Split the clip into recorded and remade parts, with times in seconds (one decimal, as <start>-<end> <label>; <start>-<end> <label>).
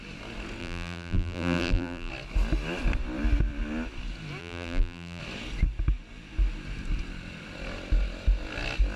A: 0.0-0.6 recorded; 0.6-2.1 remade; 2.1-4.4 recorded; 4.4-5.2 remade; 5.2-9.0 recorded